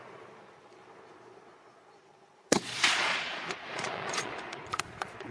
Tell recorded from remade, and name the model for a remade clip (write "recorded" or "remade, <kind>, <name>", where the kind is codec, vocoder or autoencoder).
remade, vocoder, Vocos